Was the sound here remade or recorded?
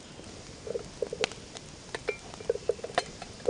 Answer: recorded